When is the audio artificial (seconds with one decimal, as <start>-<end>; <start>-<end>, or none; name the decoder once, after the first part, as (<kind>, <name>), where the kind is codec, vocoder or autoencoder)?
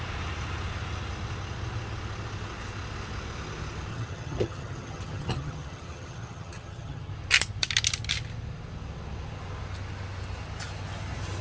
3.9-7.1 (vocoder, HiFi-GAN)